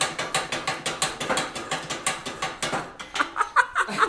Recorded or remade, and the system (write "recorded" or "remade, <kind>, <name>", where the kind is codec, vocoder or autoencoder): recorded